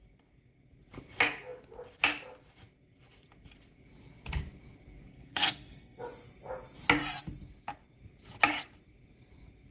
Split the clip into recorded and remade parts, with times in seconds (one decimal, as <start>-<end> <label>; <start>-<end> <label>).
0.0-5.1 recorded; 5.1-6.0 remade; 6.0-9.7 recorded